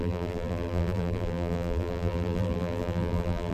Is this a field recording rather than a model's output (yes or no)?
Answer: no